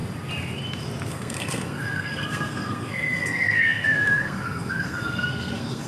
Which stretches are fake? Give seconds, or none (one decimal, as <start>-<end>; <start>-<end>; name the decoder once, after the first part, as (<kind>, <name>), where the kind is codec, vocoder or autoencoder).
1.1-5.9 (codec, SNAC)